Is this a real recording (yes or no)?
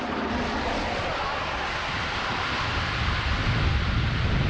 yes